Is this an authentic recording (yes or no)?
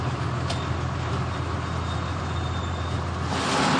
yes